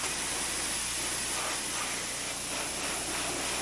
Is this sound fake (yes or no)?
no